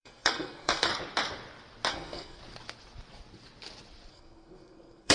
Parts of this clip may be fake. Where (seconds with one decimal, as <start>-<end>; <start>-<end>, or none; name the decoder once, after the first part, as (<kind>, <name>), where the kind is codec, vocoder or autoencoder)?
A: 0.0-0.9 (codec, SNAC); 1.9-2.4; 4.1-5.1